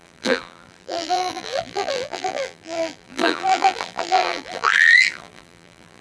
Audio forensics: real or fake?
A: fake